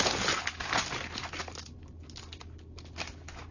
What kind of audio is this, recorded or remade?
recorded